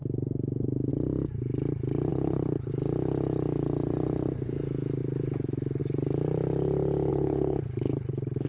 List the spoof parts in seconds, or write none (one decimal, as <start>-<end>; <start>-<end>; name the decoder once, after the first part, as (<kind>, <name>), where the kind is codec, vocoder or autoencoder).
2.1-2.7 (codec, HILCodec); 7.1-8.5